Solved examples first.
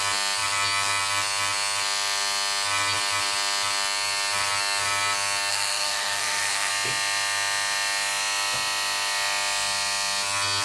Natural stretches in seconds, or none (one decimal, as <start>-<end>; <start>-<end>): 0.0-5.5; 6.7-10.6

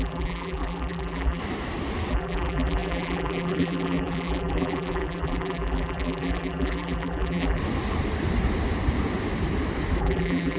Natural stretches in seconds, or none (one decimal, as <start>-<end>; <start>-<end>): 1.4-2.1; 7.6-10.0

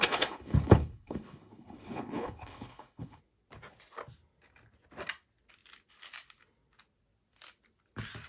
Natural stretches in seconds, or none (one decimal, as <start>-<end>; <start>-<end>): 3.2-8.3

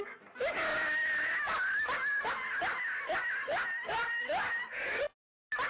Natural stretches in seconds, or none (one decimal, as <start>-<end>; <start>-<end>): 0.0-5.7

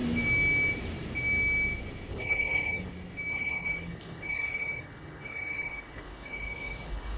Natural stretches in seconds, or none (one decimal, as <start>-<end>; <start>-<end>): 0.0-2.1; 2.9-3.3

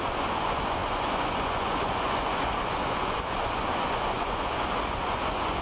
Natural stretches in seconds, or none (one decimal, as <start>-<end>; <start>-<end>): none

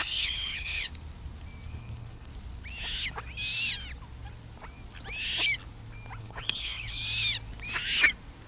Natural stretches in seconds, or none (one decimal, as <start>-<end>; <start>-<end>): 0.9-1.7; 2.3-6.2; 7.0-8.5

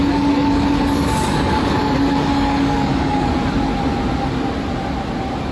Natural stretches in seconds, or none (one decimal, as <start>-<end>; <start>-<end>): 3.3-5.5